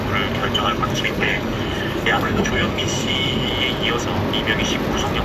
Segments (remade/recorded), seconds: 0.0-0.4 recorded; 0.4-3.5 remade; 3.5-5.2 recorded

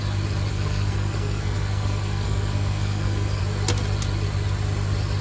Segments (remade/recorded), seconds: 0.0-0.5 recorded; 0.5-3.4 remade; 3.4-5.2 recorded

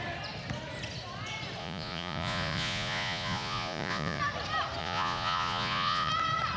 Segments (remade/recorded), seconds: 0.0-1.6 recorded; 1.6-4.2 remade; 4.2-4.8 recorded; 4.8-6.1 remade; 6.1-6.6 recorded